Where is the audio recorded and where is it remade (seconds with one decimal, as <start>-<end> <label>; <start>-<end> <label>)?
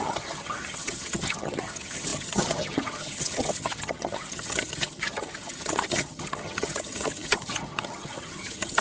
0.0-8.8 remade